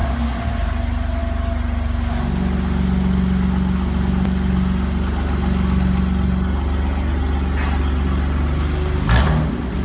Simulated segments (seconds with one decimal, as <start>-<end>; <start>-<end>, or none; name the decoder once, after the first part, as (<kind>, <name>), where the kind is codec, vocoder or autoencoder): none